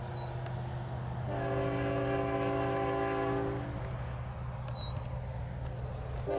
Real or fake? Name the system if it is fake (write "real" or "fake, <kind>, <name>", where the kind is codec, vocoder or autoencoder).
real